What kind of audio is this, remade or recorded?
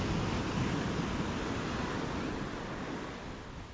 recorded